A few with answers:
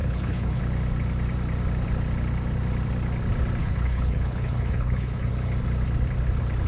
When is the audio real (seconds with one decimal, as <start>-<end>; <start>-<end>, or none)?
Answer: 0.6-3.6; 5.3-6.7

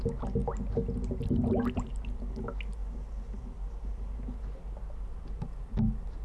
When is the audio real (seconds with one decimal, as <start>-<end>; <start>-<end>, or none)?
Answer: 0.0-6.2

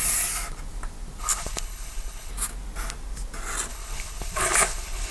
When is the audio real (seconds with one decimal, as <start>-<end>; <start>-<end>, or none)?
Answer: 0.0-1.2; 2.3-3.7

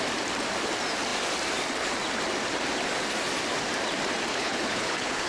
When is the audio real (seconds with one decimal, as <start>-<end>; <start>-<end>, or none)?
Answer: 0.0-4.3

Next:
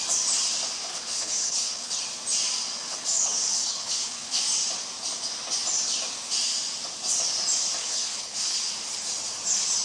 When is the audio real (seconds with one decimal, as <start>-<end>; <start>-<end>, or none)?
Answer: 0.0-0.9; 2.0-2.9; 4.4-7.8; 8.7-9.8

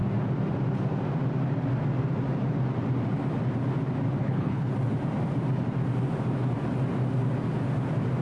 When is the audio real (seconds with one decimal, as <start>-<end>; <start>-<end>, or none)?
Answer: 0.0-4.2; 4.7-8.2

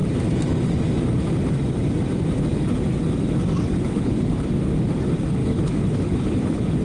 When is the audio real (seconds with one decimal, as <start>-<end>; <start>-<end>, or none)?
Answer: 0.0-3.7; 4.3-5.4

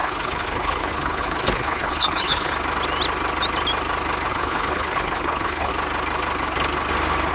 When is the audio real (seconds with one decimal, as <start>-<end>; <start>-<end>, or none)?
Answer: 2.5-4.3; 5.7-7.3